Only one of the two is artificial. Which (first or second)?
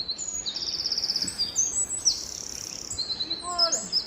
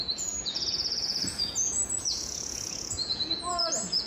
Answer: second